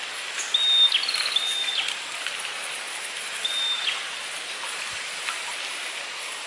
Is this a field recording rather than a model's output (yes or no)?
yes